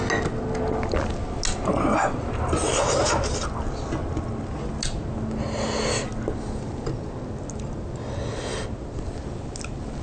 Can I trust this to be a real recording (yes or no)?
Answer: yes